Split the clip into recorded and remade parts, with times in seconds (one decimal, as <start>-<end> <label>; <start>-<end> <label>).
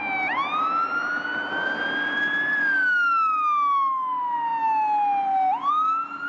0.0-6.3 recorded